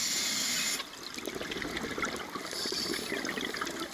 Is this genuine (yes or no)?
yes